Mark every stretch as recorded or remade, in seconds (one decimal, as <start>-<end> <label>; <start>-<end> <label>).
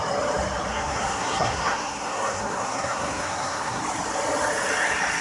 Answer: 0.0-0.7 recorded; 0.7-3.8 remade; 3.8-5.2 recorded